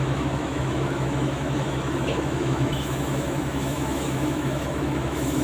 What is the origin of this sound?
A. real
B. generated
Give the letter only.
B